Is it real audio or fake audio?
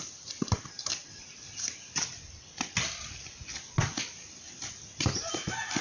real